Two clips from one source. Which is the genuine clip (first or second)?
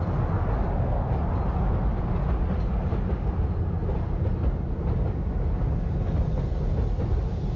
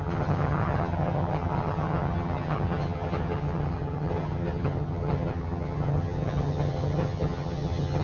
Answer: first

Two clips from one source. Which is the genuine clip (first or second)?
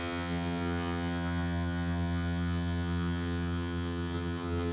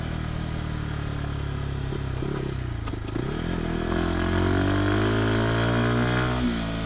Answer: second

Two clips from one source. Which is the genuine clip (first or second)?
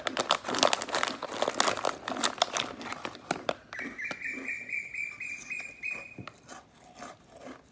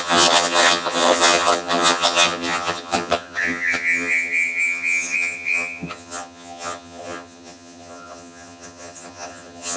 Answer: first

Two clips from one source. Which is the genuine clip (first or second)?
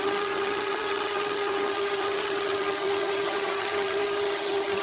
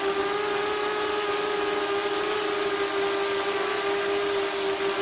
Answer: second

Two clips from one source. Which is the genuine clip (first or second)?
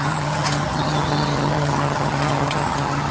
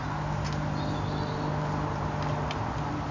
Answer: second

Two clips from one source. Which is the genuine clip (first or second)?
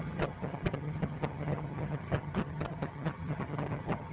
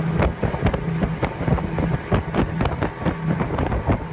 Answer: second